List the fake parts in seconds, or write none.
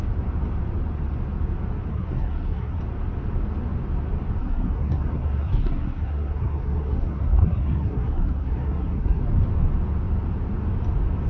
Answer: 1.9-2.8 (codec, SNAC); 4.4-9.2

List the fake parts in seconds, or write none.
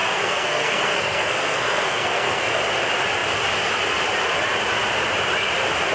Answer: 0.0-2.6 (codec, SNAC)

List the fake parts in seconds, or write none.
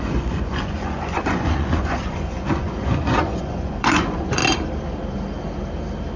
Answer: 0.0-4.4 (vocoder, Vocos)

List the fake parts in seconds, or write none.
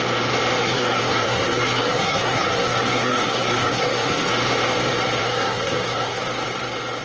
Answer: 0.6-4.3 (codec, SNAC); 5.2-6.2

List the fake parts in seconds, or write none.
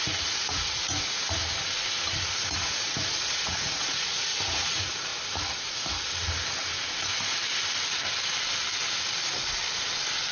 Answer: 0.0-1.4 (vocoder, Vocos); 2.0-5.1